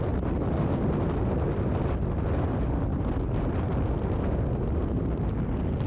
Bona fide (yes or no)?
yes